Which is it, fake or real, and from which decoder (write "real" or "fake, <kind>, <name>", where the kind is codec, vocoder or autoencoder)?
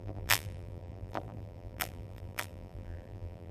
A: fake, vocoder, BigVGAN v2